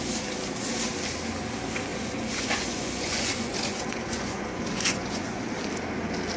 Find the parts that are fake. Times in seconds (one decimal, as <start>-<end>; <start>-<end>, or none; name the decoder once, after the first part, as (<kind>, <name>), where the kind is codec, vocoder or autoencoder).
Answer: 1.9-5.4 (vocoder, Vocos)